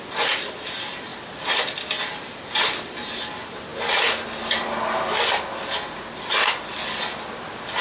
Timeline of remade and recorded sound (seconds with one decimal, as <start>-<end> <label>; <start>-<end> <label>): 0.0-7.8 recorded